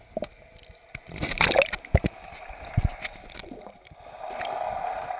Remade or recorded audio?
recorded